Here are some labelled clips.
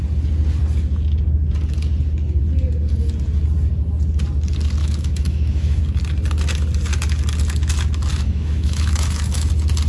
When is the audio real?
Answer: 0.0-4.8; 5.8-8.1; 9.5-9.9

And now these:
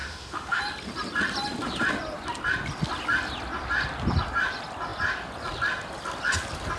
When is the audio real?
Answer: 0.6-6.8

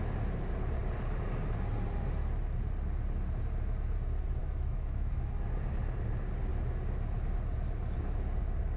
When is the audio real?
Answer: 0.0-4.4; 5.1-8.8

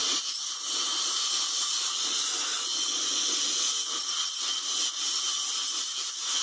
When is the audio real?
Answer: 0.0-6.4